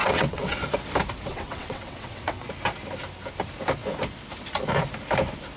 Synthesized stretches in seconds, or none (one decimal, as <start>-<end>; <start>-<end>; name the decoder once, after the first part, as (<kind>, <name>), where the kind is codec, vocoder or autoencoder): 0.0-0.6 (vocoder, WaveNeXt); 1.3-2.5